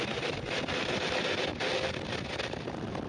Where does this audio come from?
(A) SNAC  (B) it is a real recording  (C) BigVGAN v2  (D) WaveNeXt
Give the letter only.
B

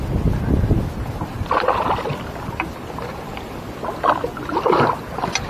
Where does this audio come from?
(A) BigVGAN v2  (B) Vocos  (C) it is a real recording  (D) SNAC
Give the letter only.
C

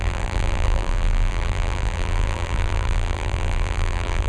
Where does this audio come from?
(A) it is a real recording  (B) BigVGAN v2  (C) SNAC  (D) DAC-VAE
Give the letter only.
B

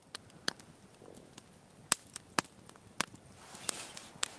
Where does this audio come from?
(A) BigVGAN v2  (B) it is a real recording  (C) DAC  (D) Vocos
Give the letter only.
B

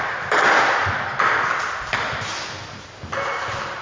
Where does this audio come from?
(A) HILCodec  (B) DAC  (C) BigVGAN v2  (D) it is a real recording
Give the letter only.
C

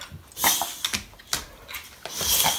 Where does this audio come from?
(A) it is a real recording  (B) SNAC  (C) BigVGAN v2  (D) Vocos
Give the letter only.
A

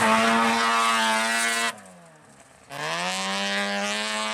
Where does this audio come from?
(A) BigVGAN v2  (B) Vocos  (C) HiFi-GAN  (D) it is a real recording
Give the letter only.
D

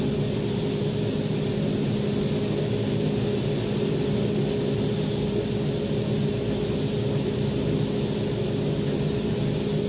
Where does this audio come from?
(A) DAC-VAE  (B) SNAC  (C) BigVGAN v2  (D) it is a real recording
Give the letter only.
D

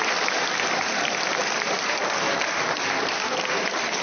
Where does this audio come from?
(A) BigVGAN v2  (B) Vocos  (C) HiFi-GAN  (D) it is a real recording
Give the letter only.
D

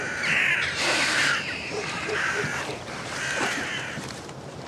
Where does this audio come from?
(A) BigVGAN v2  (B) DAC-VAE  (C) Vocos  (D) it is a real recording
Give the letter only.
A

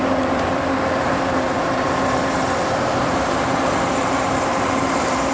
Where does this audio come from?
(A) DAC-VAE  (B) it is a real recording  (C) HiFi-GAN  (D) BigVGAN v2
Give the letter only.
D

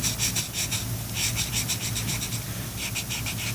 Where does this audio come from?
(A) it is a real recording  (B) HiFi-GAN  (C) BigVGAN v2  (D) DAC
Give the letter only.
A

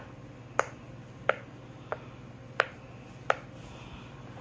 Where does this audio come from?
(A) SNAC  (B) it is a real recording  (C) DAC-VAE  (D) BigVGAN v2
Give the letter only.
B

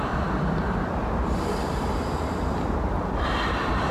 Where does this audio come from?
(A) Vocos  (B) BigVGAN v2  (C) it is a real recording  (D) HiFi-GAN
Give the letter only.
B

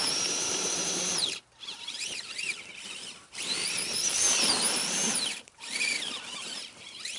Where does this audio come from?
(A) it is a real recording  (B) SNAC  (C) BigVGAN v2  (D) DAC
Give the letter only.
C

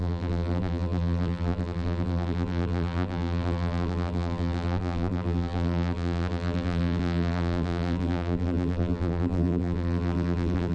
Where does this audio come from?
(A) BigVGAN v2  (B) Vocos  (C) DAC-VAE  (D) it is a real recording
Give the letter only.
A